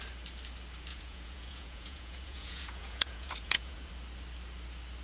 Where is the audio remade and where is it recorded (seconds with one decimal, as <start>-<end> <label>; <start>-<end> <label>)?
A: 0.0-0.9 recorded; 0.9-3.9 remade; 3.9-5.0 recorded